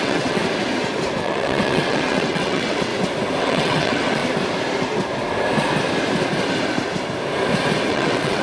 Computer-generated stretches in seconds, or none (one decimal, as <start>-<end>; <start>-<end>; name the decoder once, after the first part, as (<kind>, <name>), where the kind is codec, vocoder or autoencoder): 0.0-0.4 (vocoder, WaveNeXt); 1.2-2.9; 3.4-4.2; 7.9-8.4